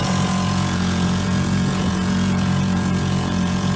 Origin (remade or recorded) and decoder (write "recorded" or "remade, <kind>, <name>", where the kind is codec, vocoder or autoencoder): remade, vocoder, Vocos